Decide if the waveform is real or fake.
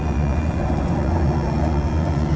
fake